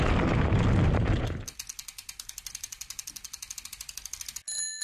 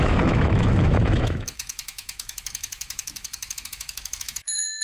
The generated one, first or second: second